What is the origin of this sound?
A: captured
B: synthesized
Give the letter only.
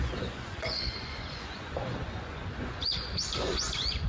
B